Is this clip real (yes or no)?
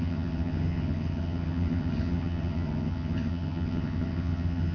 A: no